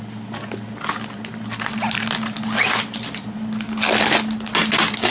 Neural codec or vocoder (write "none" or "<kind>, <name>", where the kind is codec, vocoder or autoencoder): none